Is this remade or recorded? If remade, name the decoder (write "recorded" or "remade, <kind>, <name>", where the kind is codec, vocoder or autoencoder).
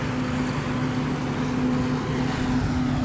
recorded